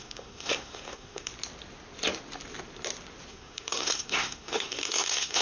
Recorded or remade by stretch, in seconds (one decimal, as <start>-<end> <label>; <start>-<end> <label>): 0.0-1.3 remade; 1.3-3.3 recorded; 3.3-5.4 remade